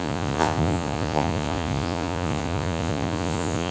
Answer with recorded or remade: remade